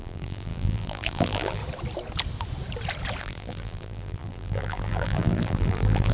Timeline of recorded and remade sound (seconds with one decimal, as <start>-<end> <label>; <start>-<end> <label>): 0.0-1.6 remade; 1.6-3.2 recorded; 3.2-6.1 remade